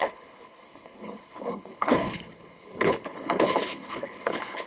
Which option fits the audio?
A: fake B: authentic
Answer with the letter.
A